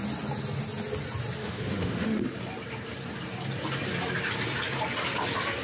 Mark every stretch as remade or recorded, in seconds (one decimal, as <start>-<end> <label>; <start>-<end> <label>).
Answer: 0.0-1.4 recorded; 1.4-2.2 remade; 2.2-5.6 recorded